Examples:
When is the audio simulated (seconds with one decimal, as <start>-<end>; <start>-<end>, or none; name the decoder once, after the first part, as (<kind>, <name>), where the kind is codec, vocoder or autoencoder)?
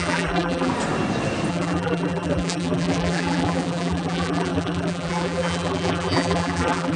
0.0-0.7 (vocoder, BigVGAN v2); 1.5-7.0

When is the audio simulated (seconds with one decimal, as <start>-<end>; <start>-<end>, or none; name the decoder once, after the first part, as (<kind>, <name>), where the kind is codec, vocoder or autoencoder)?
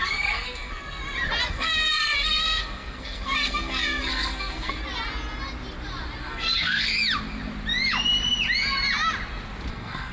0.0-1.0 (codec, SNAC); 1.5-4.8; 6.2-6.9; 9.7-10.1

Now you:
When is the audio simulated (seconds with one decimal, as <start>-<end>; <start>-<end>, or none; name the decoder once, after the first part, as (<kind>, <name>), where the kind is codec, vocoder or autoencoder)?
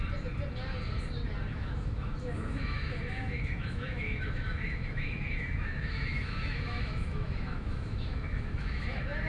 1.5-9.3 (autoencoder, DAC-VAE)